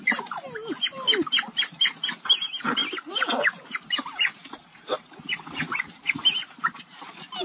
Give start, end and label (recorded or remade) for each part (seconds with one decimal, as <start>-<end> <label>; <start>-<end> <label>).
0.0-7.4 recorded

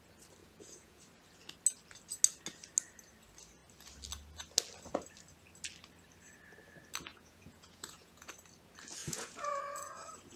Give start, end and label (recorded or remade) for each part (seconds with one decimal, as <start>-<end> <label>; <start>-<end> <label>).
0.0-0.4 recorded; 0.4-1.0 remade; 1.0-7.1 recorded; 7.1-8.3 remade; 8.3-9.0 recorded; 9.0-9.6 remade; 9.6-10.4 recorded